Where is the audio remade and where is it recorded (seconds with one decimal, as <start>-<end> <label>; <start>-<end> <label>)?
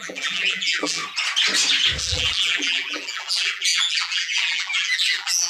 0.0-1.0 remade; 1.0-2.0 recorded; 2.0-5.5 remade